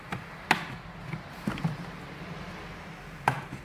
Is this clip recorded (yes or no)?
yes